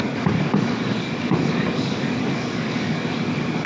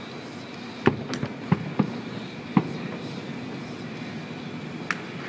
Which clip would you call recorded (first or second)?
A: second